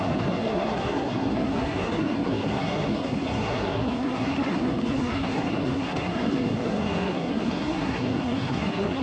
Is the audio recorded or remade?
remade